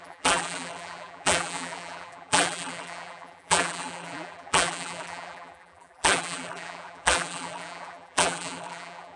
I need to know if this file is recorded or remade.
remade